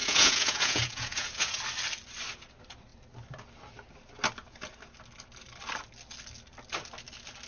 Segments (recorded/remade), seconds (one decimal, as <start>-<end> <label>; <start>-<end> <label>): 0.0-1.6 remade; 1.6-7.5 recorded